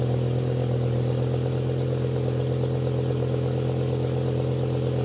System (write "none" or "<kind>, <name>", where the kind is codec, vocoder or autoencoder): none